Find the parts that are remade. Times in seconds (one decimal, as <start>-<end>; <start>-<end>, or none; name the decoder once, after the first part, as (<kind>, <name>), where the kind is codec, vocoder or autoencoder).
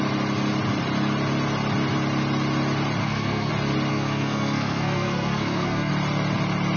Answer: 3.0-3.5 (codec, SNAC); 3.9-5.9